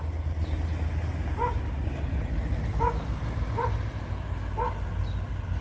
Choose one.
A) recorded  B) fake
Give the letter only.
A